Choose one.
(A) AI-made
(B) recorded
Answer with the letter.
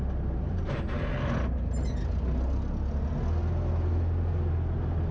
B